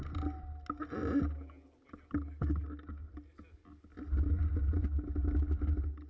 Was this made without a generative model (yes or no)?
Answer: yes